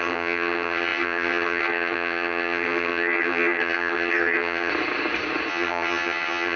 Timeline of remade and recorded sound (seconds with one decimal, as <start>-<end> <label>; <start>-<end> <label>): 0.0-4.7 remade; 4.7-5.5 recorded; 5.5-6.6 remade

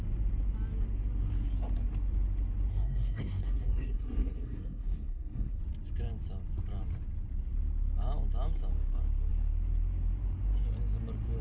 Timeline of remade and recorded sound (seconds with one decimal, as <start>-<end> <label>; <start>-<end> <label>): 0.0-2.7 recorded; 2.7-5.6 remade; 5.6-11.4 recorded

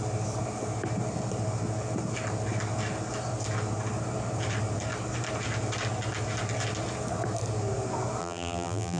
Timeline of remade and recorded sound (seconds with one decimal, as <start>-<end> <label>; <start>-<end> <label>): 0.0-8.2 recorded; 8.2-9.0 remade

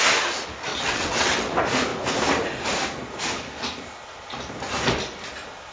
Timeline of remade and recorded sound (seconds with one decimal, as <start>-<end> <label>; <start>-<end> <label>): 0.0-0.7 recorded; 0.7-1.5 remade; 1.5-5.7 recorded

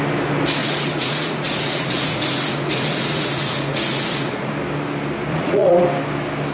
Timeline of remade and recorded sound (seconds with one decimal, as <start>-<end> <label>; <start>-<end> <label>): 0.0-0.6 recorded; 0.6-4.5 remade; 4.5-5.3 recorded; 5.3-5.8 remade; 5.8-6.5 recorded

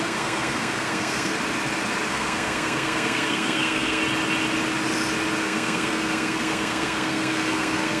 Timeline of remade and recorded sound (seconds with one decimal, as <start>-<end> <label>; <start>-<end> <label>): 0.0-1.3 remade; 1.3-2.1 recorded; 2.1-4.0 remade; 4.0-5.4 recorded; 5.4-8.0 remade

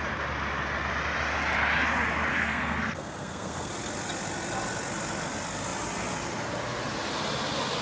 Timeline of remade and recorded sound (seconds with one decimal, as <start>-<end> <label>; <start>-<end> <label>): 0.0-2.4 recorded; 2.4-3.7 remade; 3.7-7.8 recorded

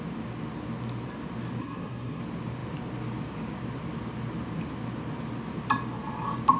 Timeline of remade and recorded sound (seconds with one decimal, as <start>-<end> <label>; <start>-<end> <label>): 0.0-1.6 recorded; 1.6-2.2 remade; 2.2-6.6 recorded